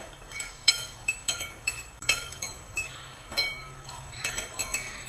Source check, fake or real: fake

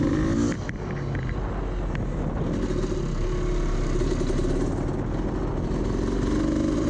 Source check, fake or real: real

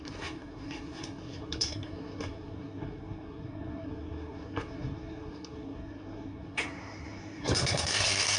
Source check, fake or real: fake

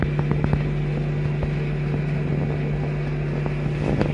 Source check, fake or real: real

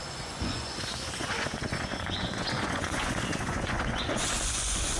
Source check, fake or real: fake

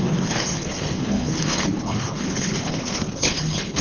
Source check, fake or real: fake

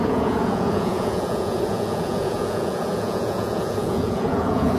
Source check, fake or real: fake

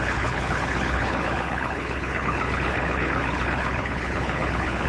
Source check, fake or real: fake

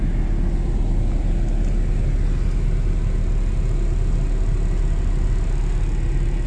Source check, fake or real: real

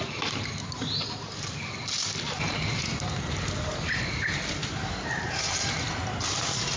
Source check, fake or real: real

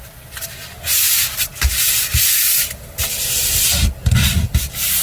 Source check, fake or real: real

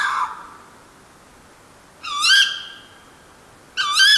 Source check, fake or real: real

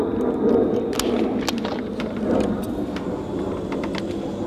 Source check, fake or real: real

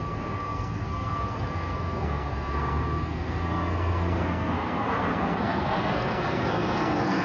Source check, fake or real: fake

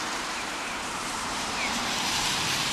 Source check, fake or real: fake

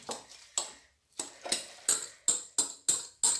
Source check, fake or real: real